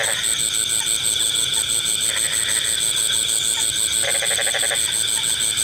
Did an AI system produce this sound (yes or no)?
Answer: no